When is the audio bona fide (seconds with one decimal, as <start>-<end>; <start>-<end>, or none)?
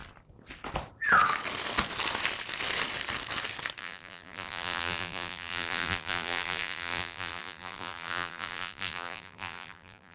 0.0-3.8